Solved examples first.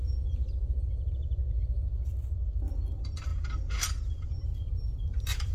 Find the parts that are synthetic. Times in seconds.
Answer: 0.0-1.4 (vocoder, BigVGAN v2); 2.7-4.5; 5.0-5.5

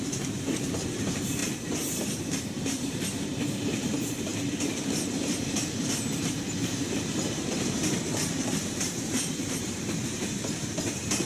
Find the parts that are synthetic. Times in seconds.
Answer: 0.0-11.3 (vocoder, BigVGAN v2)

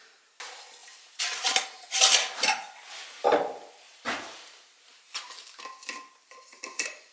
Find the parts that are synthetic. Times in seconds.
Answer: none

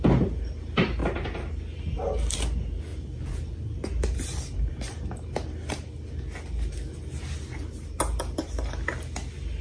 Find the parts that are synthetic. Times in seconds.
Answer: 1.0-1.8 (vocoder, BigVGAN v2); 2.9-5.7

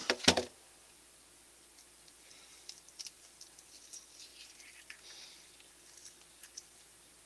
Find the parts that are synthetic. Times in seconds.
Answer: none